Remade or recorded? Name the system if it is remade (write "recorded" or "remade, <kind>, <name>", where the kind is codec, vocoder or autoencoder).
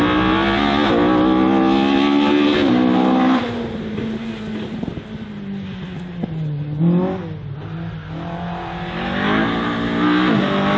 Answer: recorded